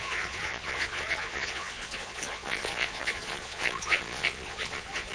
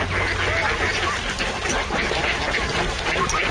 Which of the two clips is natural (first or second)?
second